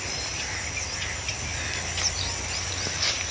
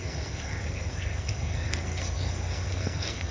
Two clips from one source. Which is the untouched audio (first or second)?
first